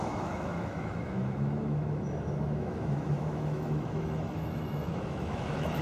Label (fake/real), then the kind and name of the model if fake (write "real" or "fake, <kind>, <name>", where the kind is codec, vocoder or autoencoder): fake, autoencoder, DAC-VAE